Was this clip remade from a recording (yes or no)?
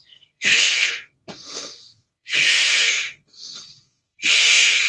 yes